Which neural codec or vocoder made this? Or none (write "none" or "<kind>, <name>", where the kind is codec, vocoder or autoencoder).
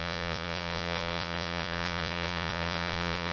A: vocoder, Vocos